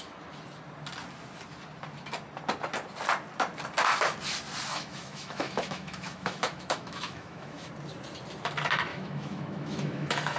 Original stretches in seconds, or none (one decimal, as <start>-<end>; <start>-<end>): 0.0-4.7; 7.7-8.9